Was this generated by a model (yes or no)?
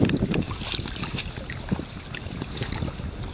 no